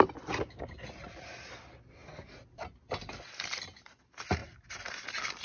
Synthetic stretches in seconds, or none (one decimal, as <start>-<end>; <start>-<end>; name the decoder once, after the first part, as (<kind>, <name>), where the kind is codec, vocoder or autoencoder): none